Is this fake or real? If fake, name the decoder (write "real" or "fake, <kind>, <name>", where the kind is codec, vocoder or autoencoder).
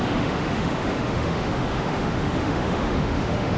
fake, autoencoder, DAC-VAE